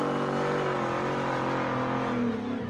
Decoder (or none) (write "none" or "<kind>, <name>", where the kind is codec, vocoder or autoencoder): none